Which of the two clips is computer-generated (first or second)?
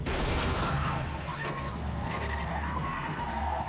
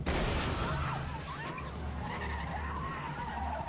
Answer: first